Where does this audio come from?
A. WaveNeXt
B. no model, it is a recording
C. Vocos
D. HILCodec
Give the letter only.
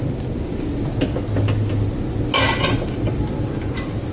B